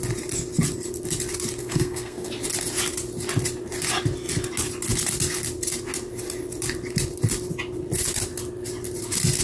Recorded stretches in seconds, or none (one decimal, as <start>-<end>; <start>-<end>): 0.0-1.6; 2.3-9.4